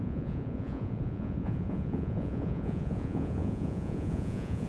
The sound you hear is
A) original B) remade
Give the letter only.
B